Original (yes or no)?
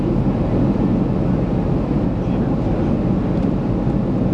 yes